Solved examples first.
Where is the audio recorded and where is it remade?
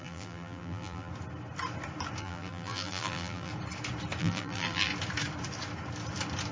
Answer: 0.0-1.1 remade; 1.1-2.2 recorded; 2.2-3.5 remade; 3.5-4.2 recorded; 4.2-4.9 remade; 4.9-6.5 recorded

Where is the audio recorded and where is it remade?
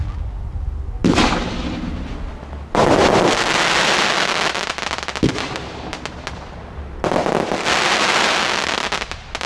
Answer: 0.0-9.5 recorded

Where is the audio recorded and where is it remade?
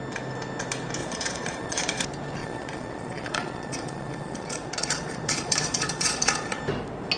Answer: 0.0-1.0 recorded; 1.0-2.0 remade; 2.0-2.4 recorded; 2.4-6.6 remade; 6.6-7.2 recorded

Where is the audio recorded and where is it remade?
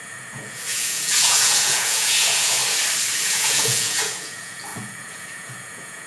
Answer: 0.0-2.6 remade; 2.6-3.2 recorded; 3.2-6.1 remade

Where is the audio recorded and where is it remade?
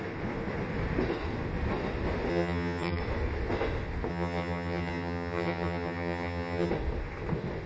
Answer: 0.0-2.3 recorded; 2.3-3.0 remade; 3.0-4.1 recorded; 4.1-6.7 remade; 6.7-7.7 recorded